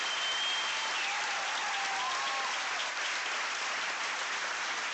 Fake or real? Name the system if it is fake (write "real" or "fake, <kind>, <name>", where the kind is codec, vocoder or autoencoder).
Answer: real